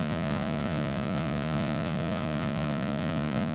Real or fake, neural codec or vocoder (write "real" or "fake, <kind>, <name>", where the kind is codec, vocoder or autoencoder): fake, vocoder, Vocos